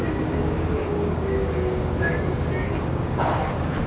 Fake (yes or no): yes